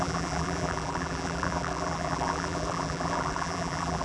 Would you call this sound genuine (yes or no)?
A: no